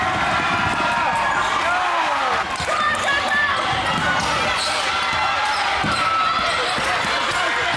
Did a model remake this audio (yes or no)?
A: no